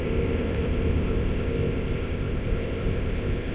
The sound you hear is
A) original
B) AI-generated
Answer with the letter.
B